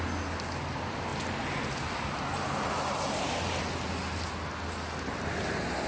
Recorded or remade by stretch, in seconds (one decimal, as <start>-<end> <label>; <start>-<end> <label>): 0.0-5.9 recorded